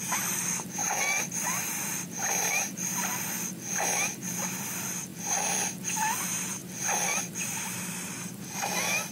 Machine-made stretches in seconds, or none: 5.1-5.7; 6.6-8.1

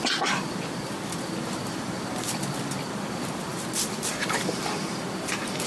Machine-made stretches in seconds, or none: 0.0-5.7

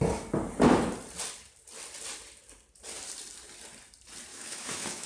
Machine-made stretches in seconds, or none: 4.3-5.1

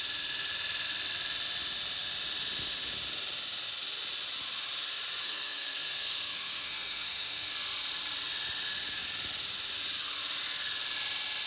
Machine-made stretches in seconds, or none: 5.2-7.5

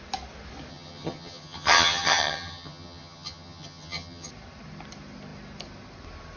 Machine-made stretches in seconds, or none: 0.7-4.3